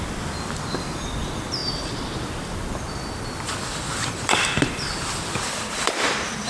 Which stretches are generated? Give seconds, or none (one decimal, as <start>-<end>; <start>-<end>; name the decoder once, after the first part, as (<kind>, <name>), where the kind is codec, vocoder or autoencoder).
0.0-1.6 (vocoder, BigVGAN v2); 3.1-6.5